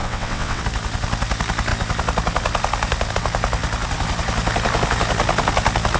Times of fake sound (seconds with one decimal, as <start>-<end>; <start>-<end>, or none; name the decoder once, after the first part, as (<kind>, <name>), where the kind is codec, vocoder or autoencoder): 0.0-0.6 (vocoder, WaveNeXt)

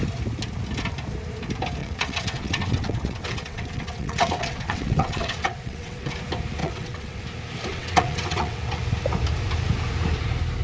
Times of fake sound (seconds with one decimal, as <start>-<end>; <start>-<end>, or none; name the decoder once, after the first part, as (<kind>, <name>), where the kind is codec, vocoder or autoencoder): 1.8-6.1 (vocoder, WaveNeXt); 6.6-7.2; 7.7-8.8

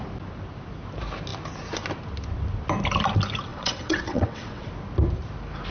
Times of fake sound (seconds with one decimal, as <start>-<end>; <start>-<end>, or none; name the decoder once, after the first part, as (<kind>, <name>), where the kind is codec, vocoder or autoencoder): 3.5-4.7 (vocoder, WaveNeXt)

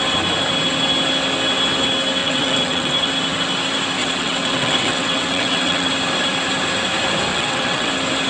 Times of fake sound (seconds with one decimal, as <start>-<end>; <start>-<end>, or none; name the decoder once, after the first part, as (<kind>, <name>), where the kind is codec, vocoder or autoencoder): 2.2-3.1 (vocoder, WaveNeXt); 4.0-5.9; 7.3-7.9

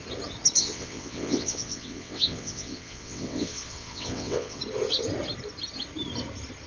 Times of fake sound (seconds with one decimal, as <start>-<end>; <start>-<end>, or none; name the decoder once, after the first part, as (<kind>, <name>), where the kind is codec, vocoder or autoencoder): 0.6-4.6 (vocoder, WaveNeXt)

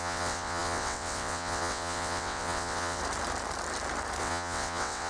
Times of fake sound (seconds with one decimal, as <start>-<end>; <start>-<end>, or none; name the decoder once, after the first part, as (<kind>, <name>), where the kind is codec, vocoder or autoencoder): 0.0-3.0 (vocoder, WaveNeXt); 4.2-5.1